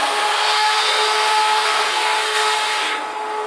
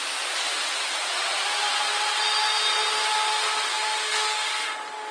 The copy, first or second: first